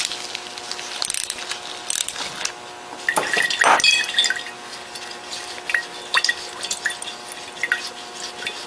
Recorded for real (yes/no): yes